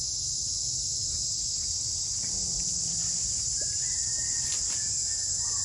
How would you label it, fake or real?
real